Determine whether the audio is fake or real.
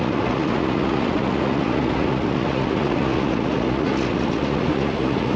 fake